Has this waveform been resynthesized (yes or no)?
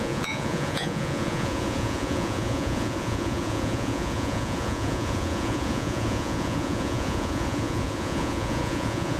yes